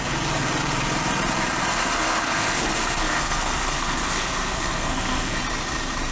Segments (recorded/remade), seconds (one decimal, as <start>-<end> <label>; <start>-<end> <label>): 0.0-1.7 recorded; 1.7-5.4 remade; 5.4-6.1 recorded